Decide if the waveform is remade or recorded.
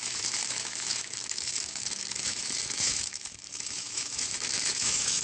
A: remade